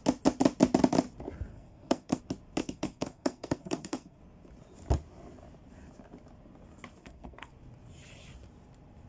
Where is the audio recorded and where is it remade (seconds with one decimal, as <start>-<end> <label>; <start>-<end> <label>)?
0.0-1.5 recorded; 1.5-2.2 remade; 2.2-2.6 recorded; 2.6-4.2 remade; 4.2-7.0 recorded; 7.0-7.5 remade; 7.5-9.1 recorded